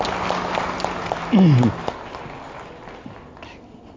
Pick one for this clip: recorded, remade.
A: recorded